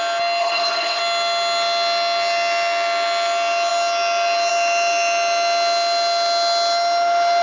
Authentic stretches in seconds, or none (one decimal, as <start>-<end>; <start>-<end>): 0.0-0.4; 1.0-7.4